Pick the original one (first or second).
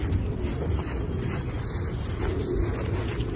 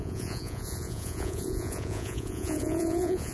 first